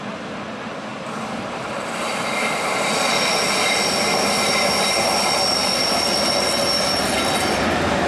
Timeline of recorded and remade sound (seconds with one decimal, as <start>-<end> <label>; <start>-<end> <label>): 0.0-8.1 recorded